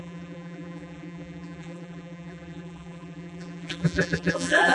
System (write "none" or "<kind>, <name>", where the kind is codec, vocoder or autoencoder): vocoder, BigVGAN v2